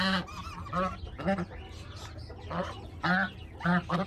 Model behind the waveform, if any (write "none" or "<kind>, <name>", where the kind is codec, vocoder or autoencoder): none